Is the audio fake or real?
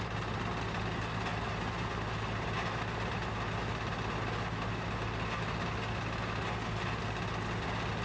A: real